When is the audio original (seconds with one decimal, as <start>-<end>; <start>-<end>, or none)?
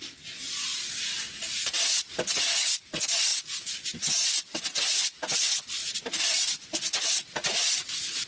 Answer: 0.0-8.3